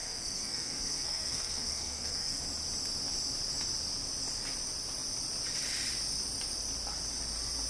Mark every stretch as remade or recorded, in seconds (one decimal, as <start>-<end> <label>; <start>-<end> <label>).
0.0-2.4 remade; 2.4-7.7 recorded